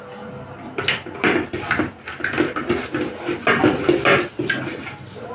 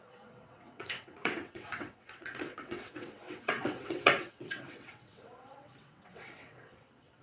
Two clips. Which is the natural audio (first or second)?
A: first